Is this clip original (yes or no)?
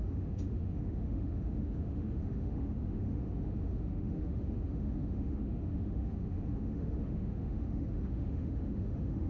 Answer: no